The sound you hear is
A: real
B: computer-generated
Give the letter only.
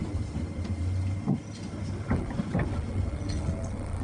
A